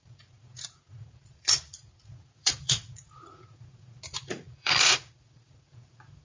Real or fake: fake